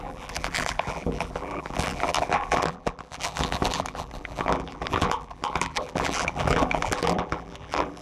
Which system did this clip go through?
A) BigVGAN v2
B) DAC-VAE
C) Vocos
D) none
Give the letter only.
A